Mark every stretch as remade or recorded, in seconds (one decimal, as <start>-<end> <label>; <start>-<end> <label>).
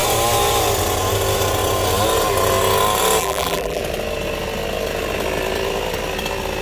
0.0-3.2 recorded; 3.2-3.8 remade; 3.8-6.6 recorded